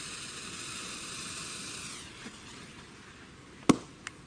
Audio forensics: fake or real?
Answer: real